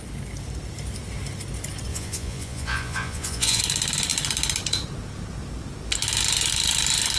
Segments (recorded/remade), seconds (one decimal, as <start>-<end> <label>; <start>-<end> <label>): 0.0-1.9 recorded; 1.9-3.6 remade; 3.6-7.2 recorded